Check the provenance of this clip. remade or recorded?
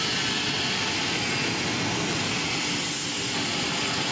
recorded